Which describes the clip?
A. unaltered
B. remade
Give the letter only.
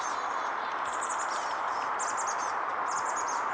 A